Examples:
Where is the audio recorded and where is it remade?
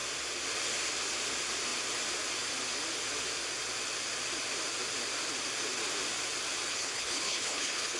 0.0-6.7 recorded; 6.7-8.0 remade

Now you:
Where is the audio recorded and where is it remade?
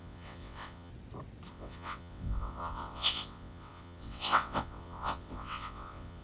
0.0-0.9 remade; 0.9-1.5 recorded; 1.5-6.2 remade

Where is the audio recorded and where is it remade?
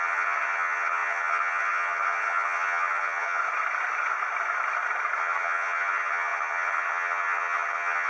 0.0-3.4 remade; 3.4-5.2 recorded; 5.2-8.1 remade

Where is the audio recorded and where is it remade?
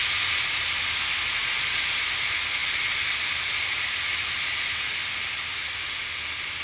0.0-6.6 recorded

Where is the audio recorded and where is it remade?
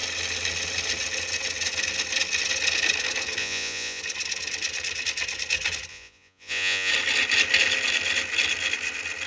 0.0-3.4 recorded; 3.4-4.0 remade; 4.0-5.9 recorded; 5.9-6.9 remade; 6.9-9.3 recorded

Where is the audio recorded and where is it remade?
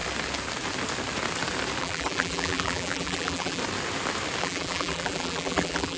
0.0-1.8 recorded; 1.8-3.6 remade; 3.6-4.4 recorded; 4.4-6.0 remade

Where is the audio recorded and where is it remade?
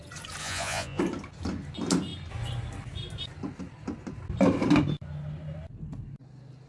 0.0-0.4 recorded; 0.4-1.0 remade; 1.0-6.7 recorded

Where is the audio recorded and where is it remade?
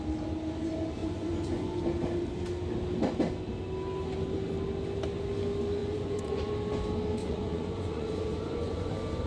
0.0-1.0 recorded; 1.0-1.8 remade; 1.8-5.8 recorded; 5.8-6.5 remade; 6.5-7.2 recorded; 7.2-8.9 remade; 8.9-9.3 recorded